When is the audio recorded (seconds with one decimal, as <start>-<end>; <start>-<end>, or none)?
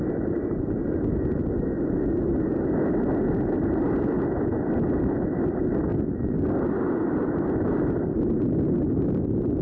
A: 0.0-9.6